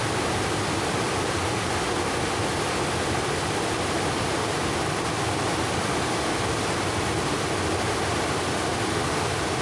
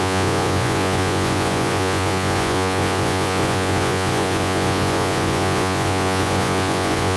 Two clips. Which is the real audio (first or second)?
first